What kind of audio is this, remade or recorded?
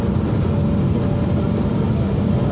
recorded